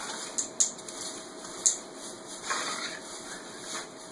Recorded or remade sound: recorded